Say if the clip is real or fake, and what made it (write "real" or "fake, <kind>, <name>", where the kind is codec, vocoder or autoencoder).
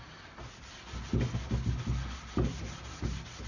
real